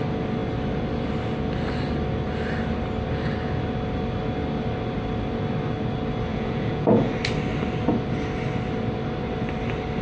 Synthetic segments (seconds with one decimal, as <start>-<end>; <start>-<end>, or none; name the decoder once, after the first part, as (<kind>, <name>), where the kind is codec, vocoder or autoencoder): 6.3-7.1 (vocoder, Vocos)